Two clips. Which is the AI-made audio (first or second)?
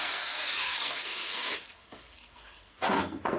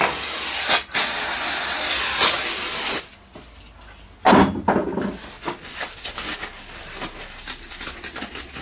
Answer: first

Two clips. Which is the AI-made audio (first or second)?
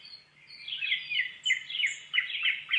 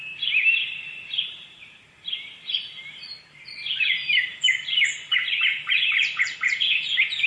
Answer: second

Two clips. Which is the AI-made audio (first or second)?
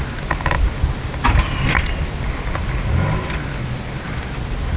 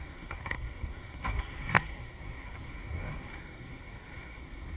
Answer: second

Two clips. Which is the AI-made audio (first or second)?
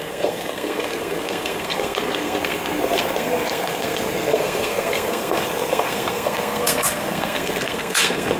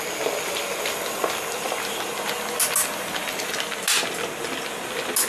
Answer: first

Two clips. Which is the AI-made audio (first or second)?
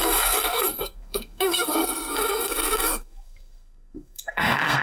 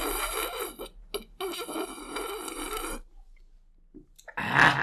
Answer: first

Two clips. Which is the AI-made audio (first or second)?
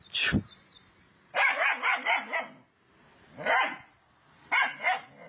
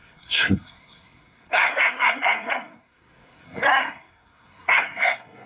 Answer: second